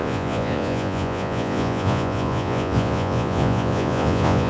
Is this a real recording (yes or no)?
no